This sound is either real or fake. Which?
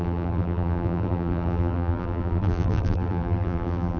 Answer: fake